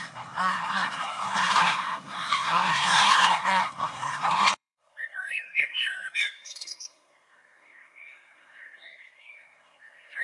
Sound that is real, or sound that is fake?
fake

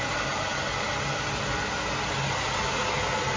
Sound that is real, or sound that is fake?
real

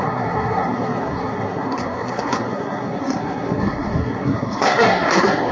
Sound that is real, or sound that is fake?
fake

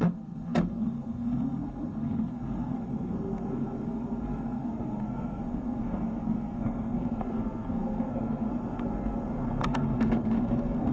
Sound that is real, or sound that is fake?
fake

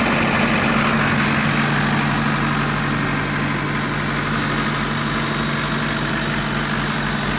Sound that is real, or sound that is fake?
real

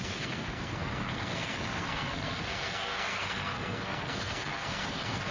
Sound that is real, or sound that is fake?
fake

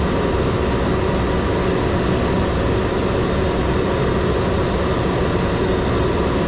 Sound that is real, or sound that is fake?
real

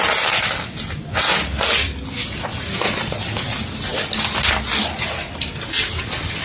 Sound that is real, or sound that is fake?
real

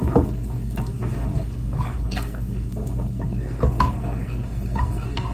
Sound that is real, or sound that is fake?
fake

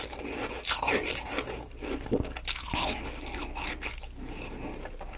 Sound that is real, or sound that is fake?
real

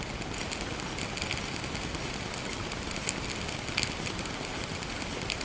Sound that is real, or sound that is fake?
real